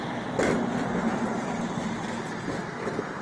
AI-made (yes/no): no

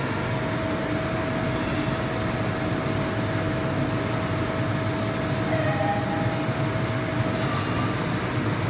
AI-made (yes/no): no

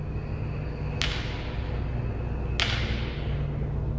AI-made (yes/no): no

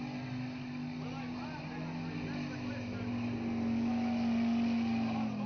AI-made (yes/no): no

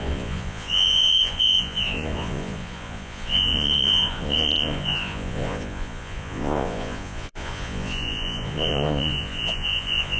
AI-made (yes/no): yes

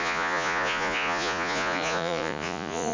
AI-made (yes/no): yes